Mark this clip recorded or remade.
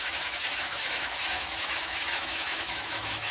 remade